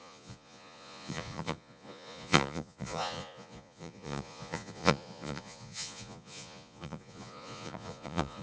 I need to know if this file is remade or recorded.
remade